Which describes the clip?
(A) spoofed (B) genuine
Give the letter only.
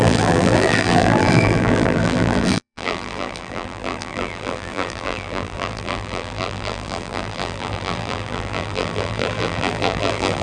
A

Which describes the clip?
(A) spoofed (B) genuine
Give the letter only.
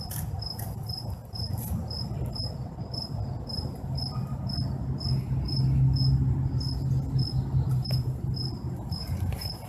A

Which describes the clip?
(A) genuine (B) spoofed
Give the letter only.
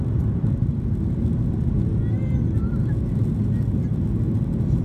A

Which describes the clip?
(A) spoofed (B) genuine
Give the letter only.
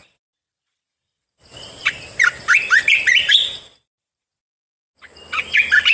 B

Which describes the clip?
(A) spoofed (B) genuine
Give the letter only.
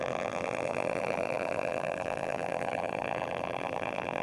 A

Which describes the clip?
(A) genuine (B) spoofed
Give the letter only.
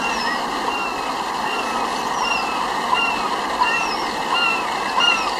B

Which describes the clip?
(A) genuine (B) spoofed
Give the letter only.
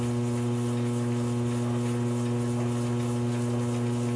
A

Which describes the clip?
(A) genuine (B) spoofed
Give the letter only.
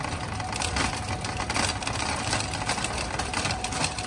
A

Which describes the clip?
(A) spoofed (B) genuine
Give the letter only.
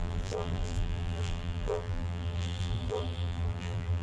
A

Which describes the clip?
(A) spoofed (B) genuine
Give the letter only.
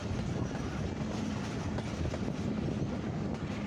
B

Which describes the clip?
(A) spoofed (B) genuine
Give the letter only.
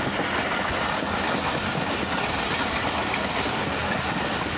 B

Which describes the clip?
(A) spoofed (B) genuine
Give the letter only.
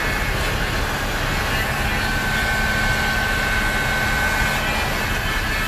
B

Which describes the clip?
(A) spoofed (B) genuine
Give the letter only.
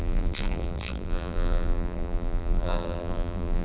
A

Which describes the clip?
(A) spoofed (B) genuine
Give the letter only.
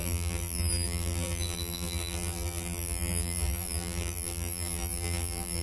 A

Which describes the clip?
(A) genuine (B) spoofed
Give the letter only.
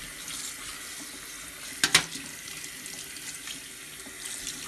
A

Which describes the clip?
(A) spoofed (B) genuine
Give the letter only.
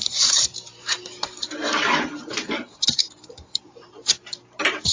A